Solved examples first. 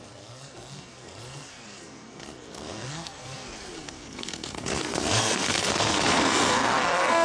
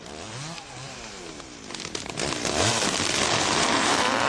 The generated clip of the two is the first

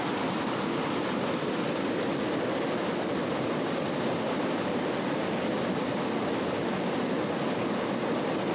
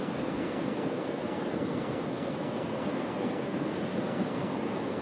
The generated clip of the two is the second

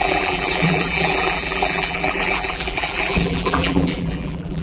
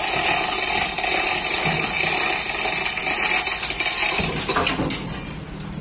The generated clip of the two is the first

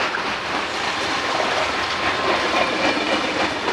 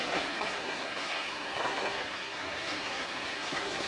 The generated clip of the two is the second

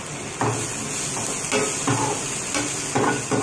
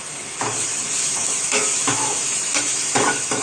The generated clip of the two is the second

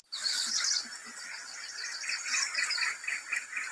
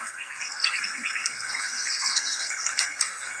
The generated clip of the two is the second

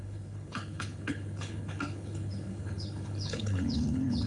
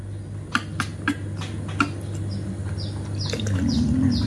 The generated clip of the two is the first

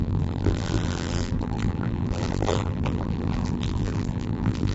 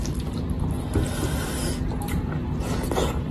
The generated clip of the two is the first